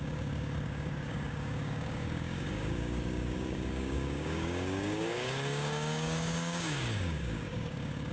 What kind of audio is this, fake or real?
fake